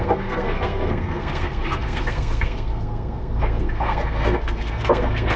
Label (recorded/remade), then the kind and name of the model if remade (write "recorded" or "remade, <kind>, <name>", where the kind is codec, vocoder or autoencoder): remade, codec, SNAC